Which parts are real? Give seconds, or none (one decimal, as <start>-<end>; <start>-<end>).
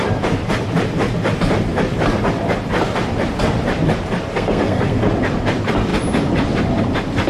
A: 0.0-4.3; 5.1-7.3